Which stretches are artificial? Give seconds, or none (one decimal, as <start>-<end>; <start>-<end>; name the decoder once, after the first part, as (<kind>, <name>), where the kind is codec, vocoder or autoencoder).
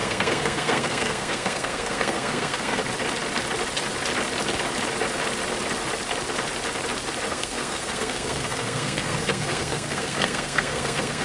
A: 0.0-2.8 (codec, SNAC); 7.3-11.2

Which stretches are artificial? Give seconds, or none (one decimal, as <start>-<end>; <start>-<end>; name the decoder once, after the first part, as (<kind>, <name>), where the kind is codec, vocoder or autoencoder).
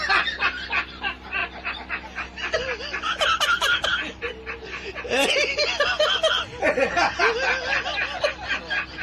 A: none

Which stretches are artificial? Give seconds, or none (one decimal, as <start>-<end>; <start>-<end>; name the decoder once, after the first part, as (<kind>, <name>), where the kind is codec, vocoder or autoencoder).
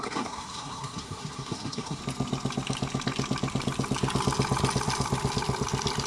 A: 0.0-2.0 (codec, SNAC)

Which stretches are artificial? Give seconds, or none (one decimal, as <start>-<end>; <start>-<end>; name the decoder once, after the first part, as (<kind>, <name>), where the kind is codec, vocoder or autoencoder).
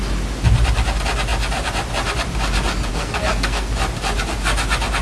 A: 2.9-3.7 (codec, SNAC)